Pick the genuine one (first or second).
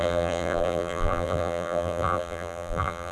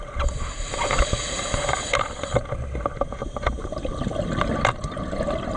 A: second